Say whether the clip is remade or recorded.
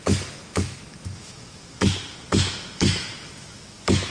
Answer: remade